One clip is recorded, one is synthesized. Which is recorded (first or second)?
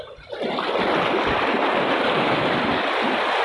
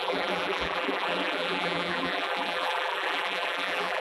first